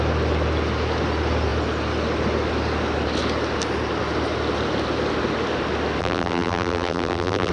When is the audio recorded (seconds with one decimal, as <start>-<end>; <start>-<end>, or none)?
0.0-6.0